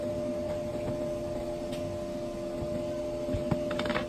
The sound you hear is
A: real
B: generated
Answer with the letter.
A